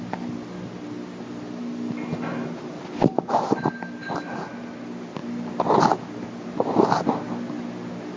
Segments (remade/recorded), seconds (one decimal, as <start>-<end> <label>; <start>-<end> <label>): 0.0-8.2 recorded